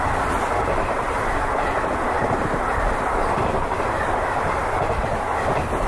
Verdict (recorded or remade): remade